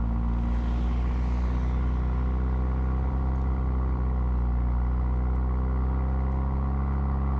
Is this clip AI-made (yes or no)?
no